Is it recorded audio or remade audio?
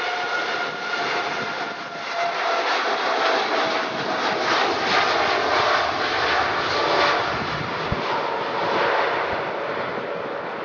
recorded